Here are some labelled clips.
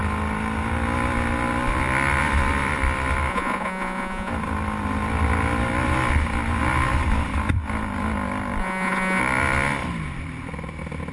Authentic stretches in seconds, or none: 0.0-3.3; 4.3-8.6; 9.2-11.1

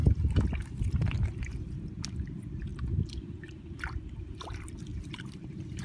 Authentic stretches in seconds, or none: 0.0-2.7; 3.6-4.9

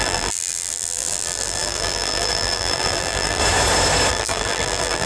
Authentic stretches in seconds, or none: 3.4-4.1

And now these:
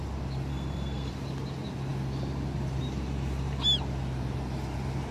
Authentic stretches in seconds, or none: 0.0-0.5; 1.1-5.1

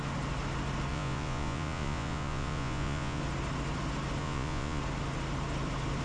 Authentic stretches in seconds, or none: 0.0-0.9; 3.2-4.2; 4.8-6.0

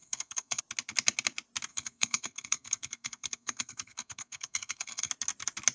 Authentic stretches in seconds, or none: 0.6-1.7; 5.1-5.7